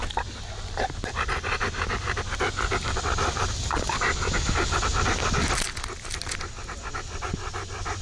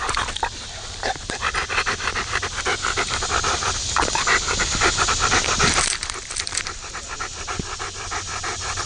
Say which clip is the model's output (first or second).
second